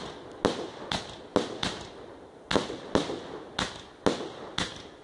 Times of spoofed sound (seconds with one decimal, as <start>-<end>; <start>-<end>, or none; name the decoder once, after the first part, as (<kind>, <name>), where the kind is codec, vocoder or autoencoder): none